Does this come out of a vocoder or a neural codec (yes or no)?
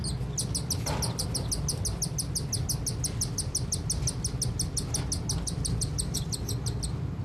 no